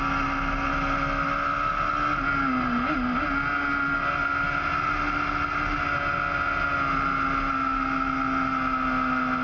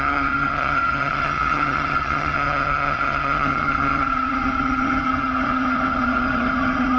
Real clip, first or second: first